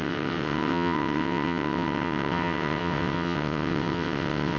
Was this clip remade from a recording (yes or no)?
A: yes